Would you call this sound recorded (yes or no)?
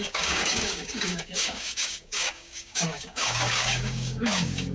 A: no